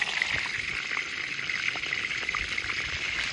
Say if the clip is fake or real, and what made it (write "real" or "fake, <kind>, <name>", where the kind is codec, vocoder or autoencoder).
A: real